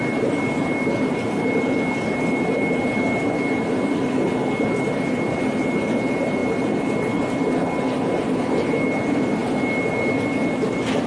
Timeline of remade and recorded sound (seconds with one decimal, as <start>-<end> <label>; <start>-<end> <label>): 0.0-11.1 recorded

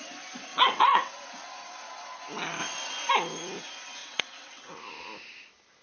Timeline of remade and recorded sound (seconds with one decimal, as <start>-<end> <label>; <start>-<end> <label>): 0.0-0.5 recorded; 0.5-1.1 remade; 1.1-4.0 recorded; 4.0-4.7 remade; 4.7-5.8 recorded

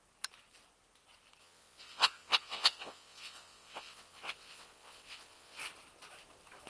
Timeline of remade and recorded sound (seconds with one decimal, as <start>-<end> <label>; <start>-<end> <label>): 0.0-1.4 recorded; 1.4-5.6 remade; 5.6-6.7 recorded

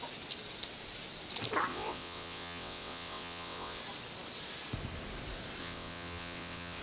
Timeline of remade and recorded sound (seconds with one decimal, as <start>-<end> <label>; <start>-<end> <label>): 0.0-1.7 recorded; 1.7-3.8 remade; 3.8-5.6 recorded; 5.6-6.8 remade

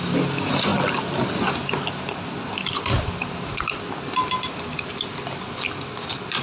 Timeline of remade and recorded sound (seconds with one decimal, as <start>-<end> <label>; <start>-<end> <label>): 0.0-6.4 recorded

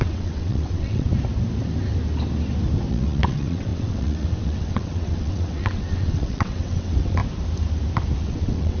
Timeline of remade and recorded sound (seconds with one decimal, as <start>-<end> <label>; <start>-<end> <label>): 0.0-1.1 remade; 1.1-2.9 recorded; 2.9-7.2 remade; 7.2-8.2 recorded; 8.2-8.8 remade

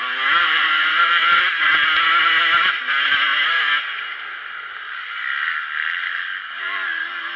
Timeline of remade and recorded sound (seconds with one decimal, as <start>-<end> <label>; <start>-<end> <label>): 0.0-0.4 recorded; 0.4-1.4 remade; 1.4-7.4 recorded

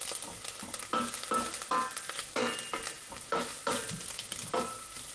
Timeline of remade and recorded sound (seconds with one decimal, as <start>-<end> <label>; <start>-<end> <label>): 0.0-5.1 recorded